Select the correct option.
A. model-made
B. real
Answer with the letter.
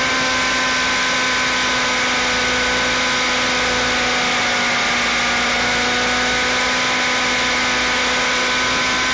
B